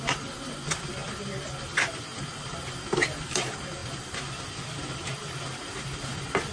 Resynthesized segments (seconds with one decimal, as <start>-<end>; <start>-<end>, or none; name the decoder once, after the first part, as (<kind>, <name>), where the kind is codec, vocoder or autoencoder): none